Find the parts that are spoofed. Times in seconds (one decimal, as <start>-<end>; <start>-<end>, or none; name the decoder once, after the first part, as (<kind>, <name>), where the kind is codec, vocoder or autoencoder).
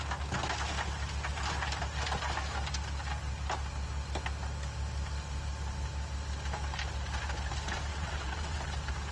7.9-8.7 (vocoder, WaveNeXt)